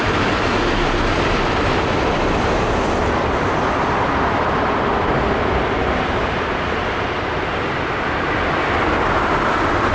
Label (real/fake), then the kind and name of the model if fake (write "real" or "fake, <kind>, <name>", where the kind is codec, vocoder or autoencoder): fake, vocoder, BigVGAN v2